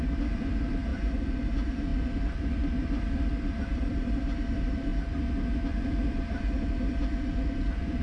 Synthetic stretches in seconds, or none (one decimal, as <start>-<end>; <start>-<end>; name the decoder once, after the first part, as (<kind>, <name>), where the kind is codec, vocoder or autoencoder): 0.0-4.9 (vocoder, BigVGAN v2); 5.7-8.0